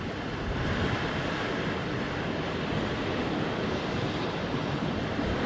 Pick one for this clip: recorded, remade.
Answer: recorded